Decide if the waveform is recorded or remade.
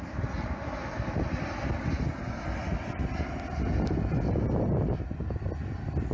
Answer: recorded